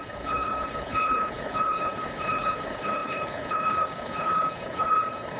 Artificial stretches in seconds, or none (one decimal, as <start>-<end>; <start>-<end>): 0.0-5.4